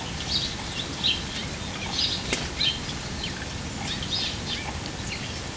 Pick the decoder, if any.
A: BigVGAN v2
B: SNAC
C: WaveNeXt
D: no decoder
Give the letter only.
D